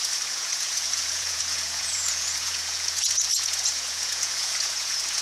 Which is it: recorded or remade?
remade